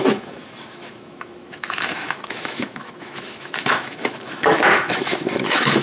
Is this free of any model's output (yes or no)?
no